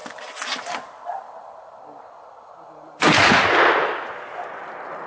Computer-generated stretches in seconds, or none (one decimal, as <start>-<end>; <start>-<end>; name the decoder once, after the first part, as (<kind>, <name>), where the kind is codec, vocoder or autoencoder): none